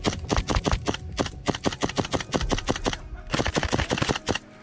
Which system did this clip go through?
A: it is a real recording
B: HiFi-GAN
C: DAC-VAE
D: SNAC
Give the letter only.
A